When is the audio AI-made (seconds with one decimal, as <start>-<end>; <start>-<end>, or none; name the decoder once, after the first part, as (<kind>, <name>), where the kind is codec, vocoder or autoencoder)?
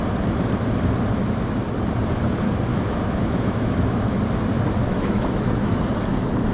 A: 2.7-4.2 (autoencoder, DAC-VAE); 4.9-5.8